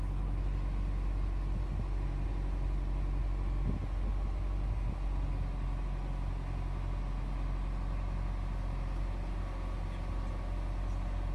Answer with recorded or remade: recorded